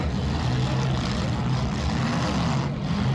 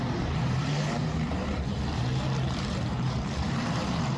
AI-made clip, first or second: second